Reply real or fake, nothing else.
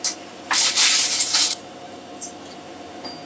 fake